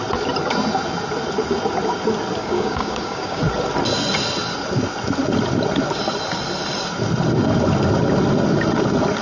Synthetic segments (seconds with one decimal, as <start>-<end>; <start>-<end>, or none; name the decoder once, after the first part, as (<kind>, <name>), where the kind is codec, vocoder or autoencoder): 2.4-3.4 (codec, DAC)